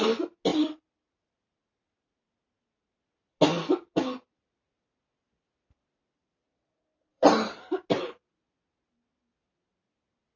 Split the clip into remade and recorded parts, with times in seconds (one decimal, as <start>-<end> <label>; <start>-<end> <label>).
0.0-0.5 recorded; 0.5-3.0 remade; 3.0-7.1 recorded; 7.1-7.6 remade; 7.6-10.4 recorded